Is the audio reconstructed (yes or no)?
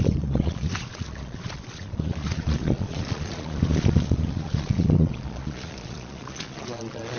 yes